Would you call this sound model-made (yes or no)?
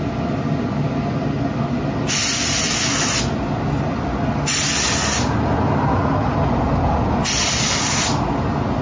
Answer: no